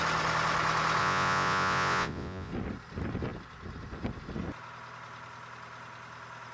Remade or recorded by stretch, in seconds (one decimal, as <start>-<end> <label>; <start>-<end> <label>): 0.0-1.0 recorded; 1.0-2.5 remade; 2.5-6.5 recorded

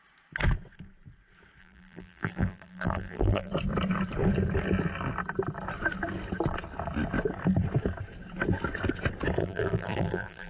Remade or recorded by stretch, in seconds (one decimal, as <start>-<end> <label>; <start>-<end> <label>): 0.0-1.6 recorded; 1.6-3.5 remade; 3.5-9.4 recorded; 9.4-10.5 remade